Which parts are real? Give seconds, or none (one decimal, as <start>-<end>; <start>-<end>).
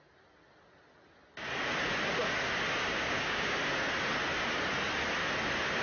0.0-2.8; 3.6-5.8